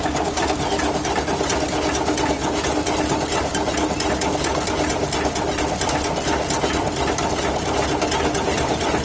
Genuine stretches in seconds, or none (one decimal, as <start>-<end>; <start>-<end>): 0.0-9.0